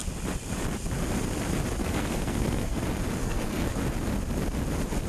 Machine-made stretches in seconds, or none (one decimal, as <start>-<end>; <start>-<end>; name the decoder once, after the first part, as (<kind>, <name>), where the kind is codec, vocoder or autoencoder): 1.8-2.8 (codec, SNAC); 3.2-3.8